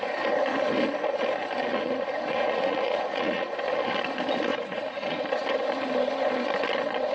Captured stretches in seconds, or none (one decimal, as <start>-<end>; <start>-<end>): 0.0-1.7; 3.5-4.5; 5.2-7.1